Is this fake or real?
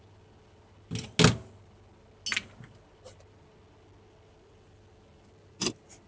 real